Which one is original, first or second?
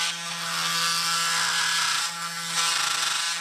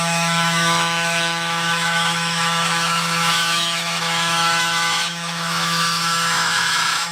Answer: first